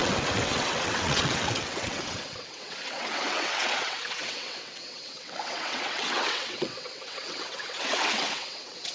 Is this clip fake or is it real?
fake